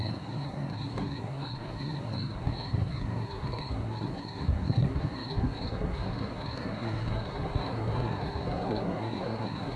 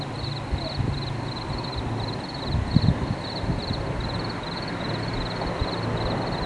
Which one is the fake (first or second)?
first